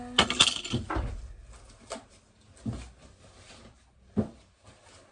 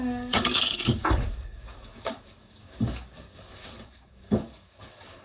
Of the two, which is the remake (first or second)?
second